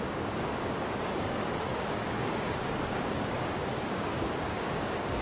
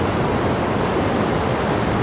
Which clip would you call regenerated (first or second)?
first